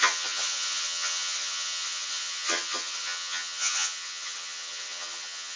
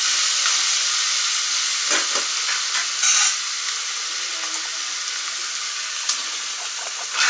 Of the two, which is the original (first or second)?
second